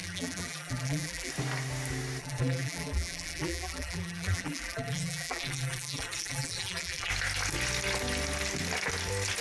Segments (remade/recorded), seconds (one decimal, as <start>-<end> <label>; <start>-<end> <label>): 0.0-1.3 remade; 1.3-2.2 recorded; 2.2-7.1 remade; 7.1-9.4 recorded